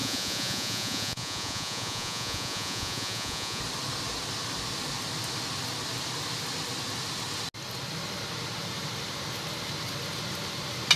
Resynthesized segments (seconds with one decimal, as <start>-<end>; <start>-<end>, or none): 0.0-3.6